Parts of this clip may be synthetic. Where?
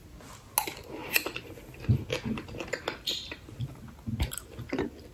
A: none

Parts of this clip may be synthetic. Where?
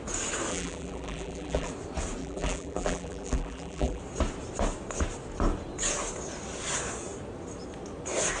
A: 0.5-1.7; 2.2-4.0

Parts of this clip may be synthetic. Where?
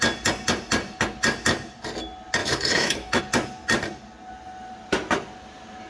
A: 2.4-3.2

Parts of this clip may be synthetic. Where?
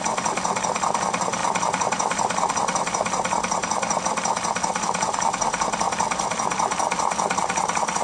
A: none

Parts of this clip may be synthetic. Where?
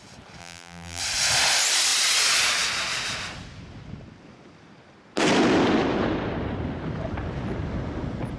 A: 0.4-1.0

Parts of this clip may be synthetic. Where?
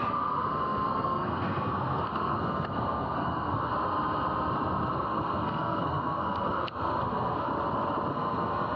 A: 0.0-3.7; 4.9-7.5; 8.1-8.8